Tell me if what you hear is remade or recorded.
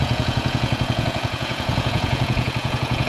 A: remade